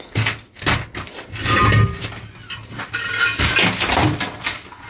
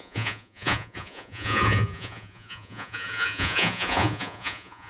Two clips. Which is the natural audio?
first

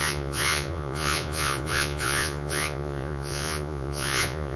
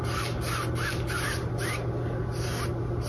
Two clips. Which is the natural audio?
second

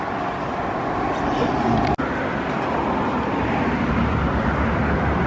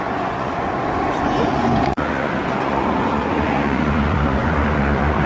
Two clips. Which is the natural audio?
first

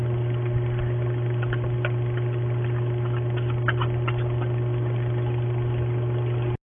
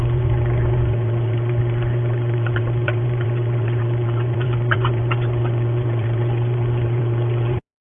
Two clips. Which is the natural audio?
first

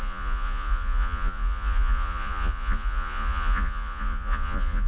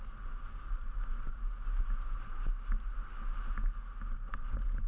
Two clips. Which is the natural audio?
second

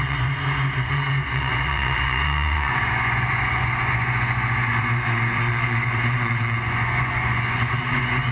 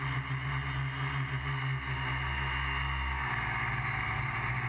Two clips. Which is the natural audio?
second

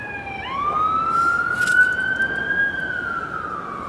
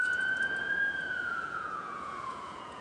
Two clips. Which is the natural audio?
first